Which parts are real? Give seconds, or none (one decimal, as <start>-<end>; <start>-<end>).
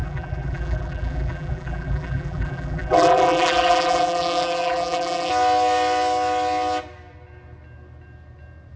5.3-8.8